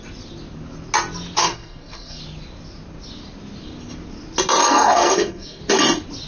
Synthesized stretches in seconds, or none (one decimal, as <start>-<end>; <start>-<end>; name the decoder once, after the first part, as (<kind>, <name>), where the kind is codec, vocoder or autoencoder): 1.4-2.2 (codec, SNAC); 4.6-5.6